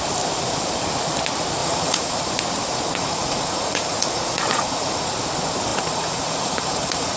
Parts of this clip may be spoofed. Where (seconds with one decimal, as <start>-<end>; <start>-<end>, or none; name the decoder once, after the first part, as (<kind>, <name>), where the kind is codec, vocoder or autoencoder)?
1.6-2.2 (vocoder, Vocos); 3.0-5.1; 5.7-7.2